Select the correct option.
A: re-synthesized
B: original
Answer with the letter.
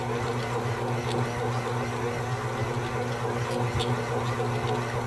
B